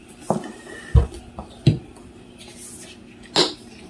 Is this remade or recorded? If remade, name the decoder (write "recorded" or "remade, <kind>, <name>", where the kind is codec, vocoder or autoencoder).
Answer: recorded